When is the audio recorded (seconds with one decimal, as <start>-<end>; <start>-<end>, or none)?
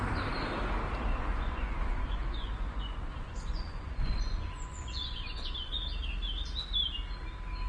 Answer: 0.0-1.1; 5.7-7.7